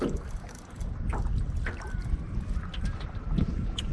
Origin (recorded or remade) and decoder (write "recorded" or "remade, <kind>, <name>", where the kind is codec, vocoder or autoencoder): recorded